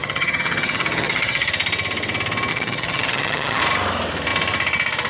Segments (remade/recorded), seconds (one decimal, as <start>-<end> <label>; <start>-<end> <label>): 0.0-1.5 remade; 1.5-2.5 recorded; 2.5-3.6 remade; 3.6-5.1 recorded